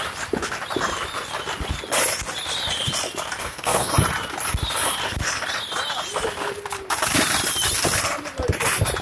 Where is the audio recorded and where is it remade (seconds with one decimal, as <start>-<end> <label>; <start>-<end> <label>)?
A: 0.0-3.4 recorded; 3.4-3.9 remade; 3.9-9.0 recorded